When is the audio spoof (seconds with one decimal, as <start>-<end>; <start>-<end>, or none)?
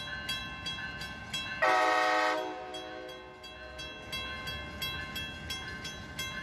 none